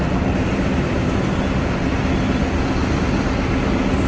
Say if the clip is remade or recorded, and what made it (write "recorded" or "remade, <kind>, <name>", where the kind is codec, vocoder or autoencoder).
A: recorded